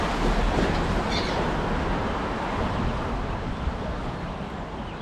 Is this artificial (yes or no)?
no